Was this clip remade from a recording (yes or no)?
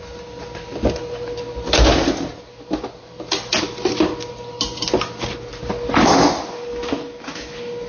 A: no